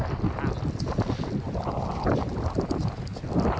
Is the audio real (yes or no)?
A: yes